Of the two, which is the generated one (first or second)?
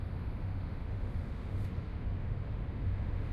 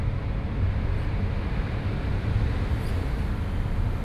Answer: first